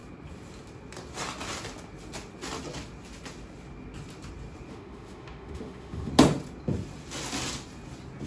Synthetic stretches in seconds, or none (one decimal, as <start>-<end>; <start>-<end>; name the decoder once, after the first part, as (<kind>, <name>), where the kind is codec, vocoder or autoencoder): 4.7-6.1 (autoencoder, DAC-VAE)